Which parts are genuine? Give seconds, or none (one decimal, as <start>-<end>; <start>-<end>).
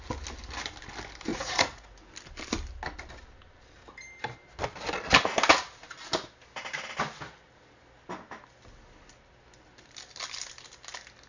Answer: 0.0-1.3; 2.1-11.3